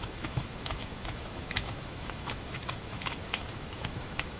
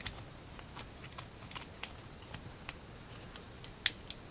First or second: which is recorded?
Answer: second